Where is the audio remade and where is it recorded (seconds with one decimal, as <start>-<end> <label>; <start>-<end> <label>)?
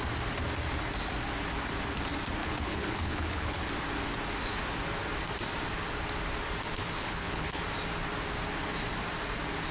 0.0-2.4 recorded; 2.4-3.7 remade; 3.7-6.7 recorded; 6.7-7.6 remade; 7.6-9.7 recorded